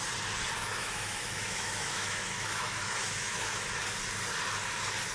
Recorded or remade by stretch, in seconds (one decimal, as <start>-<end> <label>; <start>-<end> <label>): 0.0-0.6 recorded; 0.6-3.7 remade; 3.7-5.1 recorded